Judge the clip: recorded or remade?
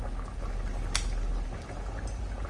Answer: recorded